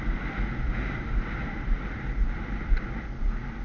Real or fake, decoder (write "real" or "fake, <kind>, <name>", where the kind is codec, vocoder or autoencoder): real